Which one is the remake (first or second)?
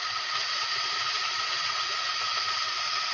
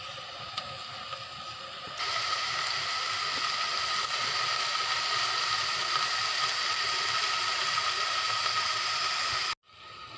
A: first